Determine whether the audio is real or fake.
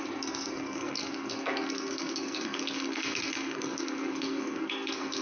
fake